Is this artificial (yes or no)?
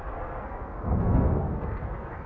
yes